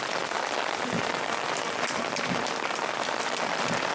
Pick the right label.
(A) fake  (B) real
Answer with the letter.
A